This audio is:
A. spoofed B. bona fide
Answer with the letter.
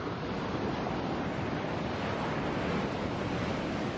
B